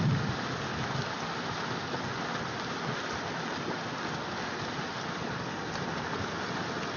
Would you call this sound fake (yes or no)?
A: no